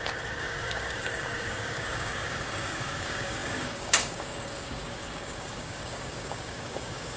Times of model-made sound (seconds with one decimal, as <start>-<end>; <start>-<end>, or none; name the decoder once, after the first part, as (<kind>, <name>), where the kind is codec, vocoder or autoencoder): 0.0-7.2 (codec, DAC)